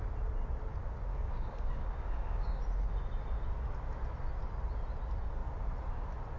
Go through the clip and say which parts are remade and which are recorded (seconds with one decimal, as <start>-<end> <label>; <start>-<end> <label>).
0.0-1.1 recorded; 1.1-2.6 remade; 2.6-6.4 recorded